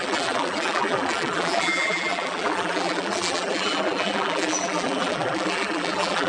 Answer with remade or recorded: remade